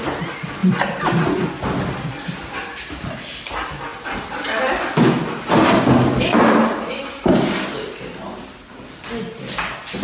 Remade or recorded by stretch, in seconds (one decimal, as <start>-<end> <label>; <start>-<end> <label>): 0.0-10.0 recorded